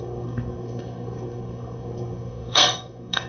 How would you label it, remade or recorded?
remade